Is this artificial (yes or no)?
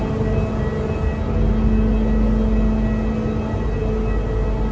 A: no